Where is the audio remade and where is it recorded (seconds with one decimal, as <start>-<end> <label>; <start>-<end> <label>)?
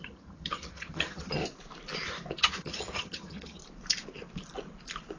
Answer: 0.0-1.4 remade; 1.4-2.4 recorded; 2.4-3.6 remade; 3.6-5.2 recorded